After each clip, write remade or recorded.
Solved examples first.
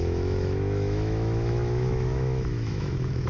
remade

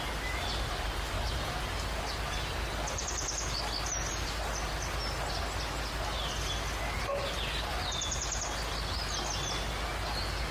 recorded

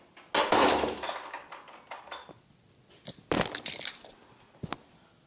recorded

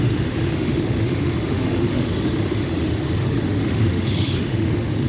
remade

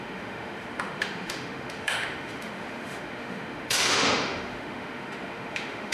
remade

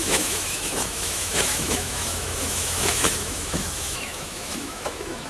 remade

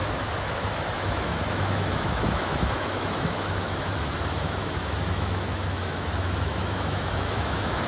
remade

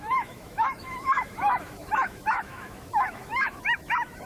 remade